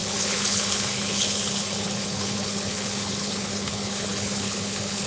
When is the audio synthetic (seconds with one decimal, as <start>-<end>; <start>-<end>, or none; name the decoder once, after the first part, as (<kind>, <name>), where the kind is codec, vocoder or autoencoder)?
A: 0.0-5.1 (codec, HILCodec)